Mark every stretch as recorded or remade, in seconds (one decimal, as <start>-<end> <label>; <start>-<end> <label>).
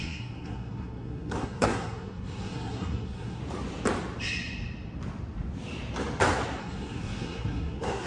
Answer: 0.0-3.4 remade; 3.4-6.6 recorded; 6.6-8.1 remade